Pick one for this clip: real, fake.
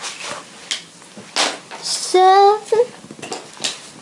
real